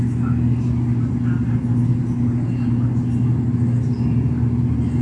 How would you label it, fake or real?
real